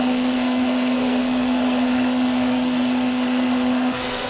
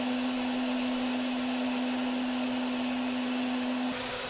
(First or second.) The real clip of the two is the second